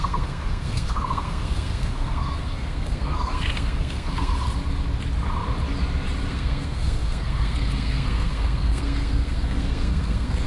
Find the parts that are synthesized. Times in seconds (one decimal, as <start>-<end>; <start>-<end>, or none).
0.0-4.3; 6.3-10.5